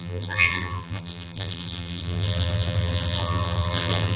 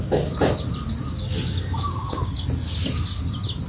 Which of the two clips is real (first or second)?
second